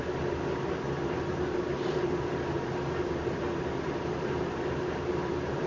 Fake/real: real